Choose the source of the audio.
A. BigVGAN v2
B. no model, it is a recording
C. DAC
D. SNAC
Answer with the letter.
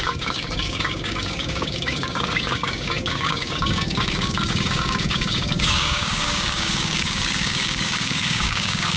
C